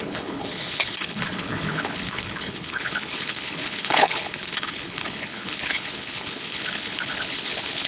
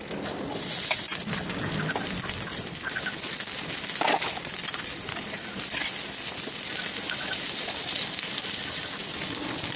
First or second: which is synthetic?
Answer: first